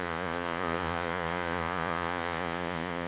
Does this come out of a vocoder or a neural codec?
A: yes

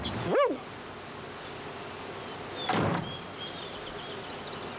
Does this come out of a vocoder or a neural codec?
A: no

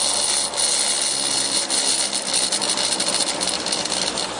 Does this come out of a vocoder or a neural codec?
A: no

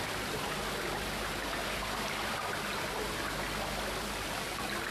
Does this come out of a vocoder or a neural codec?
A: no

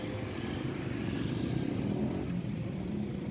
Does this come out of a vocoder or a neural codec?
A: no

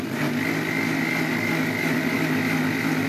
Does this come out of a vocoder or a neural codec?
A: no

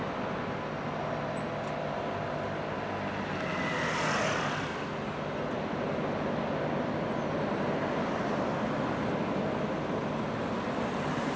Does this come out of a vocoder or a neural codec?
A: no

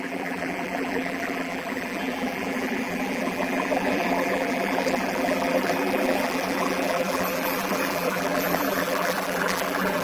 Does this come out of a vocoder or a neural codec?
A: yes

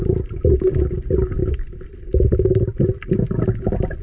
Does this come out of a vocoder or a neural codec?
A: no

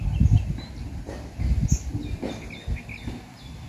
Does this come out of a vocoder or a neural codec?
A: no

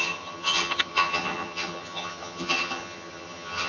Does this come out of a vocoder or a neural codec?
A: yes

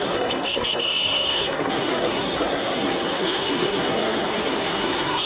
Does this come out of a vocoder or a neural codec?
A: yes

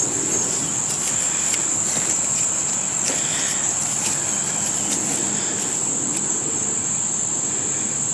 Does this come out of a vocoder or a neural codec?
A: no